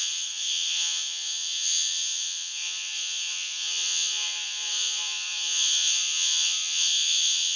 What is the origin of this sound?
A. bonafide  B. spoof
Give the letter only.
B